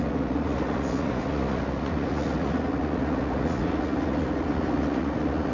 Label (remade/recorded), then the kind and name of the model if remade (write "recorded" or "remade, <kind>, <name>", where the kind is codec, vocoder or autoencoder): remade, vocoder, Vocos